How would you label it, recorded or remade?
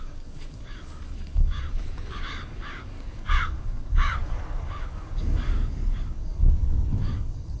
remade